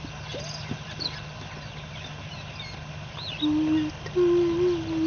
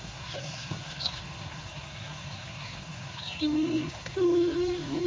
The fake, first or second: second